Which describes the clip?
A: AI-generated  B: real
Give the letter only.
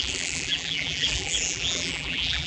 A